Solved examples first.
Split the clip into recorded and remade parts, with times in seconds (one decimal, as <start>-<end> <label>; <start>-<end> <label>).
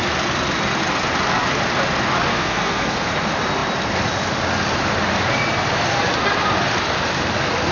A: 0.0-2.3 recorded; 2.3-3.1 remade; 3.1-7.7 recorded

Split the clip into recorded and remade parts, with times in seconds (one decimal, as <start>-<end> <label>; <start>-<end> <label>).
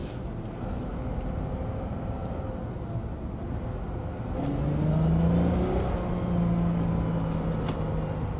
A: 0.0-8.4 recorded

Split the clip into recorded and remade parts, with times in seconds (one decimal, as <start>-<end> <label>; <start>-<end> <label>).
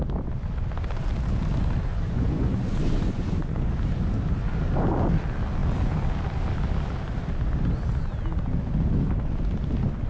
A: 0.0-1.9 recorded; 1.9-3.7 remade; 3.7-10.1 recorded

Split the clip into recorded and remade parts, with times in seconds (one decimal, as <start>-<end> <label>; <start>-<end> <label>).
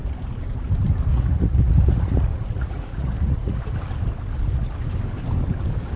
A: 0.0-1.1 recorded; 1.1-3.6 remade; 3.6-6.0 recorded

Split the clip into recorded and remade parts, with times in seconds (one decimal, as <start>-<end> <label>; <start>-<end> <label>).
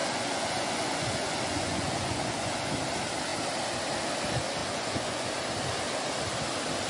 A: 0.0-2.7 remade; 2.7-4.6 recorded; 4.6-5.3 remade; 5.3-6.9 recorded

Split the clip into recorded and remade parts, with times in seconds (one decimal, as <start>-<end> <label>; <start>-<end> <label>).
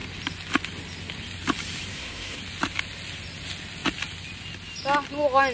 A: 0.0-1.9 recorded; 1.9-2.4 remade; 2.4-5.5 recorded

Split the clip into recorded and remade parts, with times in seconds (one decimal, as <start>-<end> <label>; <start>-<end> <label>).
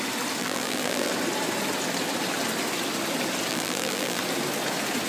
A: 0.0-0.4 recorded; 0.4-1.1 remade; 1.1-3.5 recorded; 3.5-4.2 remade; 4.2-5.1 recorded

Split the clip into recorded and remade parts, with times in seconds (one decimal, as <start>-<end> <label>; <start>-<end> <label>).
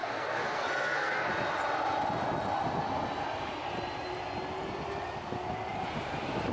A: 0.0-1.3 remade; 1.3-6.5 recorded